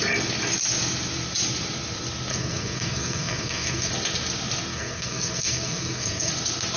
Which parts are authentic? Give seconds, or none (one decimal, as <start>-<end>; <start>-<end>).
0.0-2.3; 3.9-4.7; 6.3-6.8